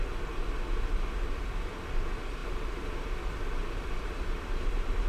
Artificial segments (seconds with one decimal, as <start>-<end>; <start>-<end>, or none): none